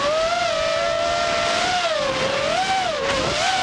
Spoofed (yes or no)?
no